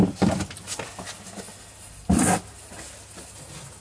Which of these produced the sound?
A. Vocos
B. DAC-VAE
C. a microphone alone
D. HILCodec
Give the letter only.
C